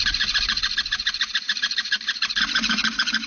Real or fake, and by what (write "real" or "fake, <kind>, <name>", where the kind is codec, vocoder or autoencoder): real